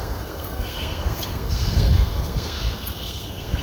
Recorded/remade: remade